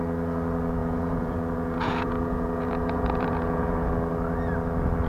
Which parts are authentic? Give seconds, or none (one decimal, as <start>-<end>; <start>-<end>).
0.0-0.8; 3.9-5.1